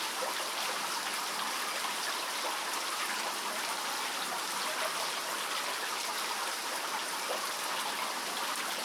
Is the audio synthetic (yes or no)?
no